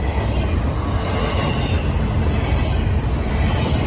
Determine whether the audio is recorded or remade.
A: recorded